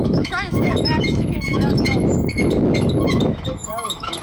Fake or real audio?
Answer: fake